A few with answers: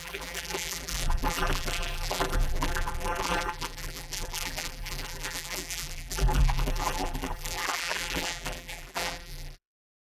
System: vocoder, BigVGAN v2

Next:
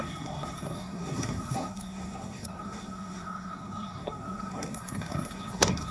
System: codec, SNAC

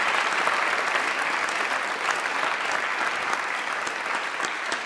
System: none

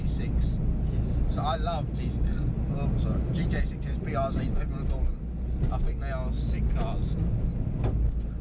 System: none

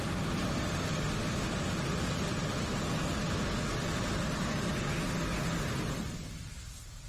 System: none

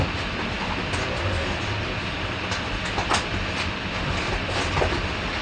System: none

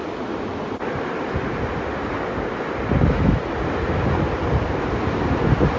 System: none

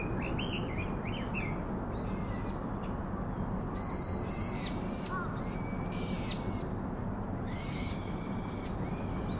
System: none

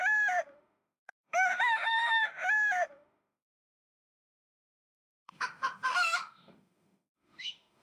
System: autoencoder, DAC-VAE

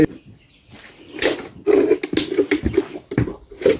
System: none